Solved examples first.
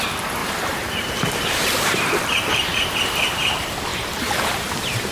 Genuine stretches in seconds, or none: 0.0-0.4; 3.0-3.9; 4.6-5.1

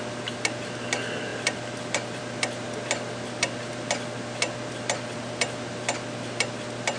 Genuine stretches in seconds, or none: 0.0-7.0

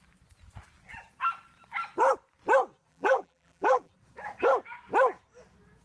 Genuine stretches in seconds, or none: 0.0-2.9; 3.9-5.8